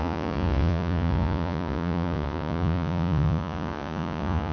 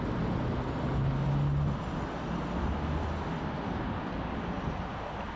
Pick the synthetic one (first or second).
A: first